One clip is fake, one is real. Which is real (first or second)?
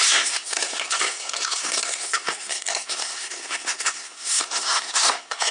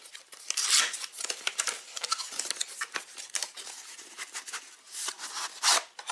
second